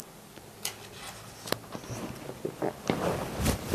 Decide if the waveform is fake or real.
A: real